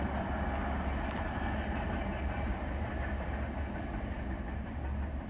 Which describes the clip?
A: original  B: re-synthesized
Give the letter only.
A